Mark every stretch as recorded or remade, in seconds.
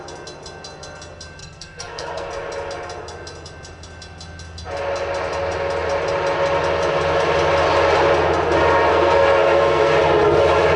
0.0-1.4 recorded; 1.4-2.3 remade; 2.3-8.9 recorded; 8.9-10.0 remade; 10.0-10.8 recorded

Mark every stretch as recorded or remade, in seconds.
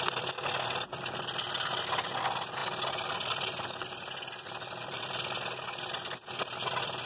0.0-7.1 recorded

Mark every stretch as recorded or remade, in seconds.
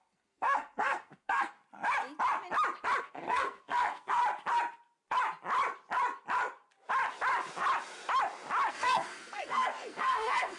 0.0-1.6 remade; 1.6-3.0 recorded; 3.0-4.2 remade; 4.2-8.7 recorded; 8.7-10.6 remade